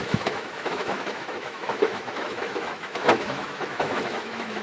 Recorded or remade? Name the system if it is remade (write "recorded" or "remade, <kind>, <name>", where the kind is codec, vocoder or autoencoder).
remade, autoencoder, DAC-VAE